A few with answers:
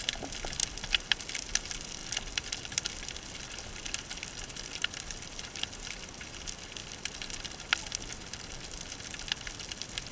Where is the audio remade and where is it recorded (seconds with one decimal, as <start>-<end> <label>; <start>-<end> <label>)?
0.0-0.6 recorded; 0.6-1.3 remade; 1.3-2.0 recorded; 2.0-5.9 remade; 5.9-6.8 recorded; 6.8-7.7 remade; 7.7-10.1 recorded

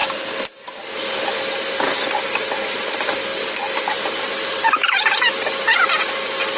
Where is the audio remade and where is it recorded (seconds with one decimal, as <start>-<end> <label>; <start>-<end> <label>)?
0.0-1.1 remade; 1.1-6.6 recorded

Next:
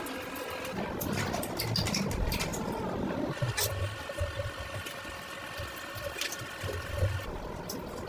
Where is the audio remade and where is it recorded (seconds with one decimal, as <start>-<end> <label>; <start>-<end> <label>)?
0.0-8.1 recorded